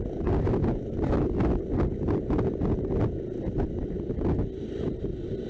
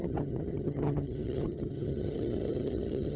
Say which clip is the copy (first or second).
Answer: second